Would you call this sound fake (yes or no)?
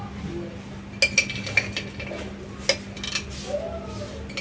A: no